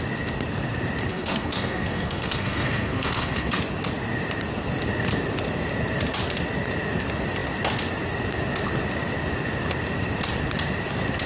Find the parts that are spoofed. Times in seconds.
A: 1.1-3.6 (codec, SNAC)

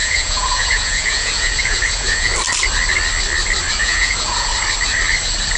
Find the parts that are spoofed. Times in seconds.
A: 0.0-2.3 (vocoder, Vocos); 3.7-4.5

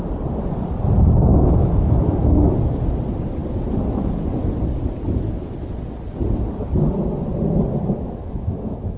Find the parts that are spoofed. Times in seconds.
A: 1.3-2.5 (autoencoder, DAC-VAE); 8.2-9.0

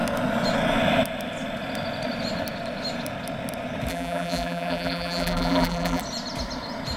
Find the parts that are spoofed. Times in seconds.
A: 3.9-6.0 (vocoder, BigVGAN v2)

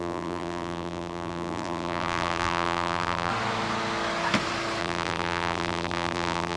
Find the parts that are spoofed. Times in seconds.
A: 0.0-3.3 (vocoder, BigVGAN v2); 4.8-6.6

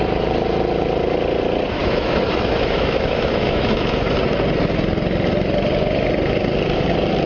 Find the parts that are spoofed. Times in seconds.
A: 1.8-4.2 (autoencoder, DAC-VAE)